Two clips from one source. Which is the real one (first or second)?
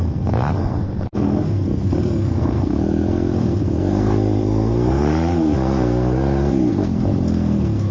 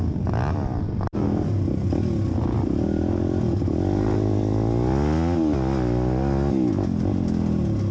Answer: second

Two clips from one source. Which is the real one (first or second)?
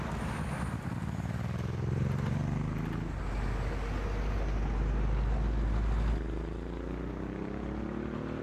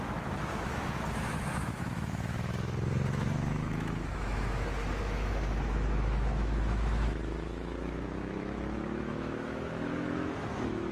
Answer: first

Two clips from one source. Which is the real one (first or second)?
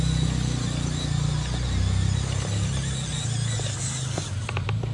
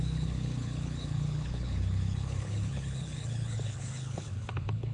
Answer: first